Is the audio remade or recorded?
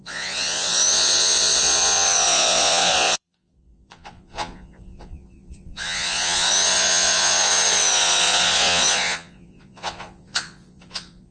remade